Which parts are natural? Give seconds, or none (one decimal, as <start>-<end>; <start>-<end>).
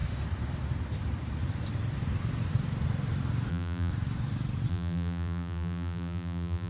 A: 0.0-3.5; 3.9-4.7